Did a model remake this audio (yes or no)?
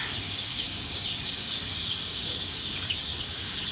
yes